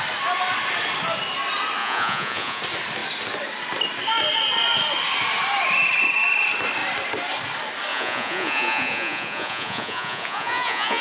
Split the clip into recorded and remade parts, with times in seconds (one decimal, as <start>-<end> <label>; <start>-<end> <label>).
0.0-1.8 recorded; 1.8-2.6 remade; 2.6-7.9 recorded; 7.9-11.0 remade